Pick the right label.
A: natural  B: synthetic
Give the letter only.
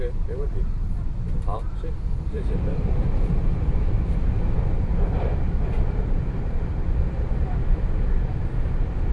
B